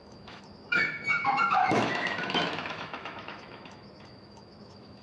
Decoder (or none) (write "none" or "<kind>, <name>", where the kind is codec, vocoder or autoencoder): autoencoder, DAC-VAE